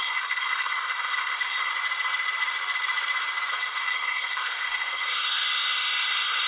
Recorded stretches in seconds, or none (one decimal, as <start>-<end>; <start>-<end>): 1.7-3.5